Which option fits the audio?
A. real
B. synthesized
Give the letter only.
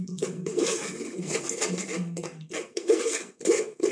B